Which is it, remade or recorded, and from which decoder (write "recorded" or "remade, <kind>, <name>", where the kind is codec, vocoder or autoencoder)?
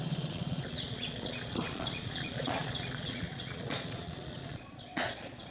remade, vocoder, Vocos